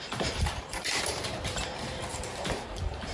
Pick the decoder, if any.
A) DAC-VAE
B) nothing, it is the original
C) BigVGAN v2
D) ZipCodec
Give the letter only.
C